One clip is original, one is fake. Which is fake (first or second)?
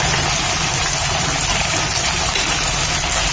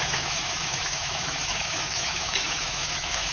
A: second